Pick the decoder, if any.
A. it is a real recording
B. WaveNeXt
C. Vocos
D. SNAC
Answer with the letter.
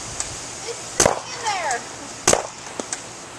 A